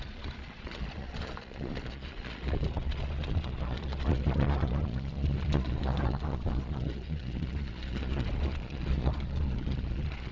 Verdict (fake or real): fake